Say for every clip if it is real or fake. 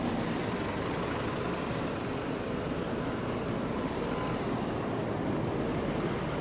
fake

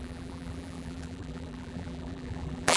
fake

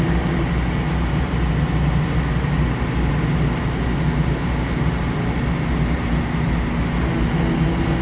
real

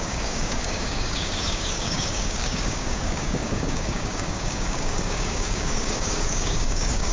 fake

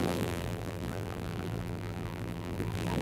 fake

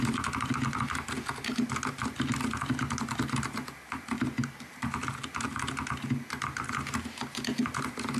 real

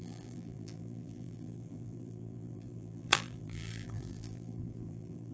fake